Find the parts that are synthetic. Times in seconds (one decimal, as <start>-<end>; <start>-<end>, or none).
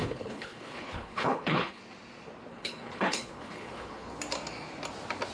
0.0-1.8; 2.5-4.2